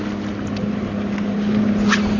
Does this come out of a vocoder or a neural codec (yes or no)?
no